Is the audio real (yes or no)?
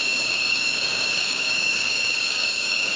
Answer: no